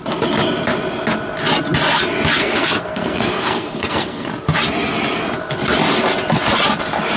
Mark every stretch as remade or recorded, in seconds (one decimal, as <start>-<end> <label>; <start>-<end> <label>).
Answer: 0.0-2.4 recorded; 2.4-4.3 remade; 4.3-7.2 recorded